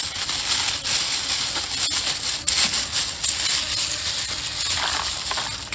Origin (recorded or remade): recorded